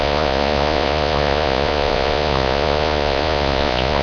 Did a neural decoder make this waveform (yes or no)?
yes